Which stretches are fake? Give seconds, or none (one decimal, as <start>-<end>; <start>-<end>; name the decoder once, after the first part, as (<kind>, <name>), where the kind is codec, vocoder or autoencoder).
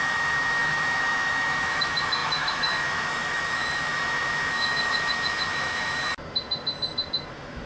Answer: 0.0-6.1 (autoencoder, DAC-VAE); 7.3-7.7